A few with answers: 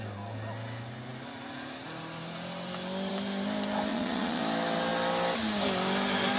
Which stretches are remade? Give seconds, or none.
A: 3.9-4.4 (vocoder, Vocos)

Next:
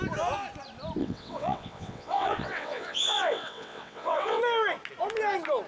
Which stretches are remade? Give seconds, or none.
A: 1.0-4.4 (vocoder, WaveNeXt)